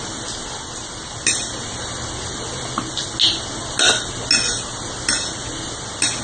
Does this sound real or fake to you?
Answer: real